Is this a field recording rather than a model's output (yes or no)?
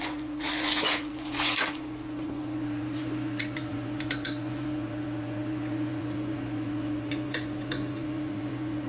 no